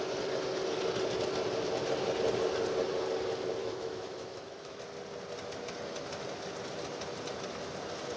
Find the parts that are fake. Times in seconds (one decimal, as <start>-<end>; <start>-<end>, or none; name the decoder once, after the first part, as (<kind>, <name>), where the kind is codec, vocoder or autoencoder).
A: 3.6-4.8 (autoencoder, DAC-VAE)